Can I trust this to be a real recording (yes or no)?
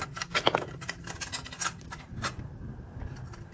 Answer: yes